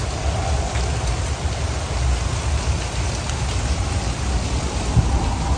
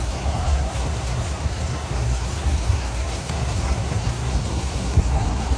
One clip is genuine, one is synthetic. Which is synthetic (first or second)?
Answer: second